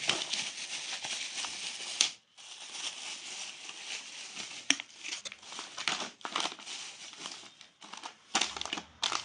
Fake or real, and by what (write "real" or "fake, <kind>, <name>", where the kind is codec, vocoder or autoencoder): real